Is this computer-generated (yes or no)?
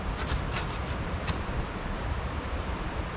no